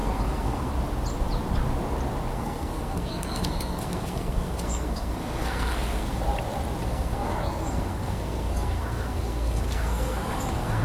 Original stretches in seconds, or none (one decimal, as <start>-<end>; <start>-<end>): 0.7-2.3; 6.2-6.8